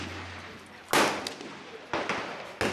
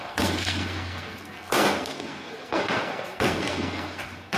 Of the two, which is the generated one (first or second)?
second